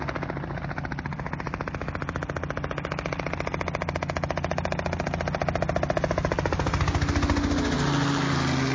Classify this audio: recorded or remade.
recorded